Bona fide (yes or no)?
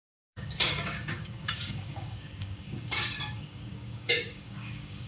no